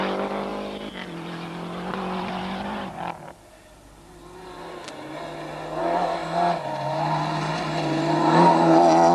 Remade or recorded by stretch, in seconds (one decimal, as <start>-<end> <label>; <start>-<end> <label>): 0.0-9.1 recorded